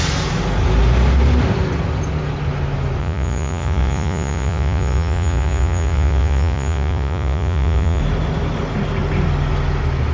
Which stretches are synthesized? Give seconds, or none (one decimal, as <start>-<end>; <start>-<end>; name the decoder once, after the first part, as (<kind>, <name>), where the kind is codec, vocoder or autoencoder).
3.0-8.0 (vocoder, Vocos)